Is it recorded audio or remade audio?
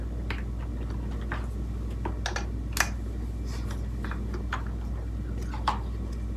recorded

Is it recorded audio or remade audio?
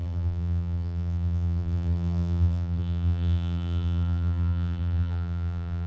remade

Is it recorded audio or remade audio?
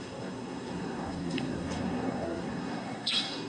remade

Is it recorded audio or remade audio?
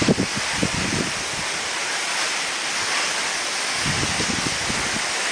recorded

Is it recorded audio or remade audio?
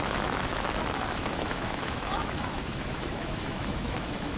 remade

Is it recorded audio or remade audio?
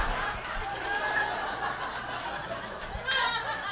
recorded